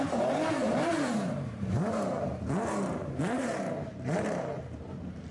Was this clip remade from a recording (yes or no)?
yes